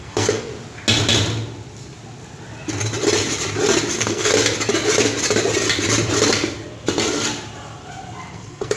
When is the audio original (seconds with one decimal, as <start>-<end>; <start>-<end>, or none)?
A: 0.5-3.9; 4.3-8.3